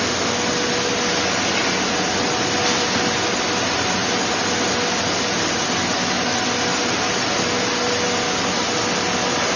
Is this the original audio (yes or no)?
yes